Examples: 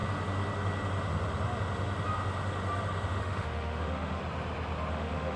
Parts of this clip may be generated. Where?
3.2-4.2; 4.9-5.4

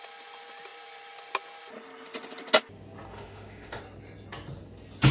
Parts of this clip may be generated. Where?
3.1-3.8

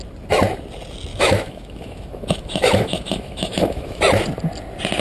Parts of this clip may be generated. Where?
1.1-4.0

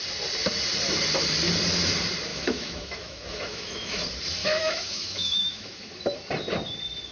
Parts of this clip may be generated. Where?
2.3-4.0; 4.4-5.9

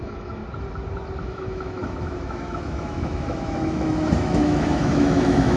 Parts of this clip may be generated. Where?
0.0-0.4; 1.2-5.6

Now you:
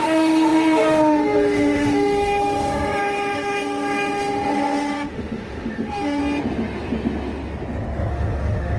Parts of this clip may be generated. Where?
0.0-6.2; 8.1-8.8

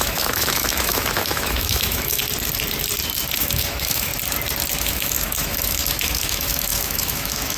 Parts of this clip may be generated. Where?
0.0-2.2; 3.4-4.1; 4.7-7.6